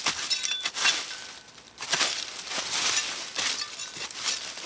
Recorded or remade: recorded